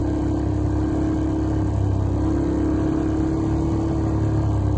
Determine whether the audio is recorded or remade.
recorded